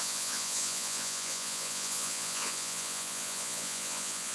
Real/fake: fake